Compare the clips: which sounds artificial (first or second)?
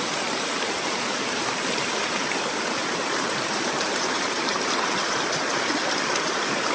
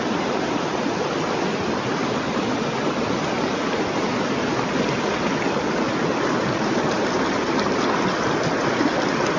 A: first